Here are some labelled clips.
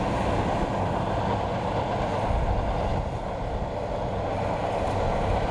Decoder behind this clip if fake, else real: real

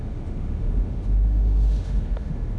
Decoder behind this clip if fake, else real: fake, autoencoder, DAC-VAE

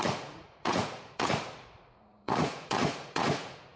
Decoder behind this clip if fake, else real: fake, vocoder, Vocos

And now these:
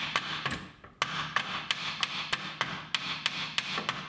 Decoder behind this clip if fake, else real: real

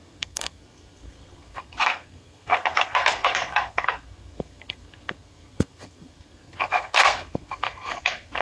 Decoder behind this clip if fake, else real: fake, codec, SNAC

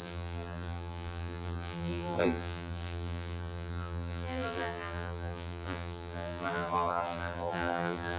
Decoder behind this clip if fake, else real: fake, vocoder, BigVGAN v2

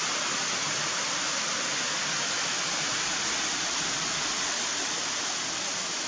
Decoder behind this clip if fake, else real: real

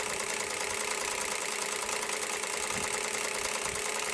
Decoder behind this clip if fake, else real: real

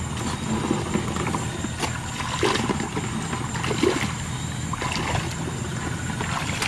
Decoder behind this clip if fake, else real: real